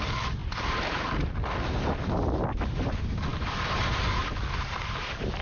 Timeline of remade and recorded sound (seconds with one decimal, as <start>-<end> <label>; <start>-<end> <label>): 0.0-0.4 recorded; 0.4-1.2 remade; 1.2-3.3 recorded; 3.3-4.0 remade; 4.0-5.4 recorded